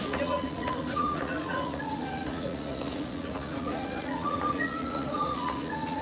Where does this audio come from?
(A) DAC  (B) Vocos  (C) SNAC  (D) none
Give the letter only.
B